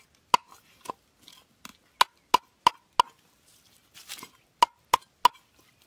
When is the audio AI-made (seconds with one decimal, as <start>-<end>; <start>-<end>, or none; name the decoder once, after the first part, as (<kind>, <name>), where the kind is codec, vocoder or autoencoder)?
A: 0.4-0.9 (vocoder, BigVGAN v2)